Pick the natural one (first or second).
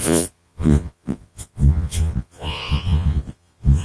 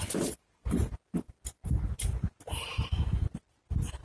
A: second